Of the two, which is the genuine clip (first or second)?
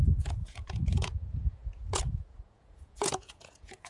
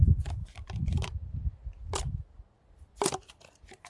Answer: second